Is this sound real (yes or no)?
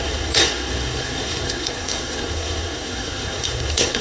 no